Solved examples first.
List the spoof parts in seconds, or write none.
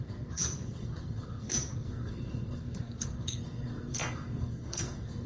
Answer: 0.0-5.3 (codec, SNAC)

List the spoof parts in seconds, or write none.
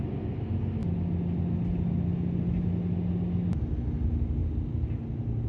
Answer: none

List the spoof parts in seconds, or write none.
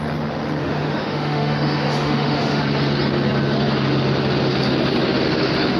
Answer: 0.6-2.6 (autoencoder, DAC-VAE)